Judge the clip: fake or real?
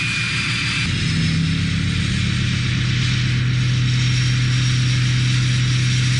real